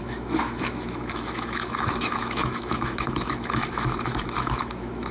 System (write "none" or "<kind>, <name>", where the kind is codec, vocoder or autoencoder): autoencoder, DAC-VAE